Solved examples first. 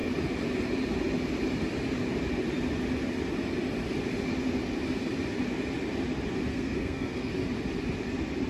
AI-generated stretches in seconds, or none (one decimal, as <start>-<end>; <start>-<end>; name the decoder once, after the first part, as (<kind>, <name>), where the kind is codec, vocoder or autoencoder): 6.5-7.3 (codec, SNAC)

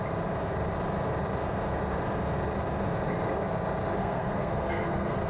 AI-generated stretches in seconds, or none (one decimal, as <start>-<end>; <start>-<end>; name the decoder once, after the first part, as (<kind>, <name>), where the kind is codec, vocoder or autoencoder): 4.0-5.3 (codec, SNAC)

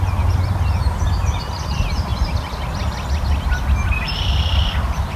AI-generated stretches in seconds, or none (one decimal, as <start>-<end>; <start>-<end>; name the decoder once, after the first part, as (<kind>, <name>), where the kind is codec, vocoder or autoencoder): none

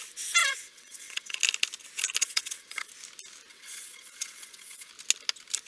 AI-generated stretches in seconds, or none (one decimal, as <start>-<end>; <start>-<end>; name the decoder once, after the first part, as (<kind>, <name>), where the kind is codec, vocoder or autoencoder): 0.4-1.4 (vocoder, WaveNeXt); 2.2-2.9; 3.5-4.9